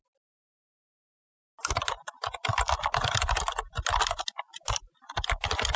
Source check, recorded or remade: recorded